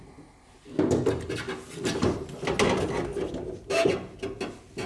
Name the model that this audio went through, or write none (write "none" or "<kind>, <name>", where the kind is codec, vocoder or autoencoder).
none